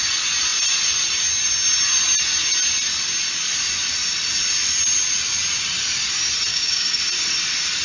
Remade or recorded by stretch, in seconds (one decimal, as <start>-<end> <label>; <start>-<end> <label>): 0.0-6.5 recorded; 6.5-7.0 remade; 7.0-7.8 recorded